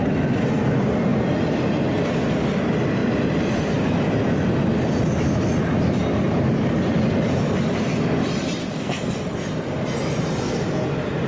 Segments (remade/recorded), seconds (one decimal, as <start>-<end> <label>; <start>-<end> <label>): 0.0-8.6 recorded; 8.6-9.1 remade; 9.1-11.3 recorded